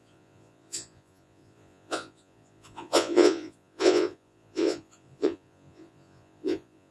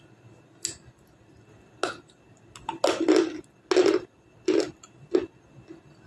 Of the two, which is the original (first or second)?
second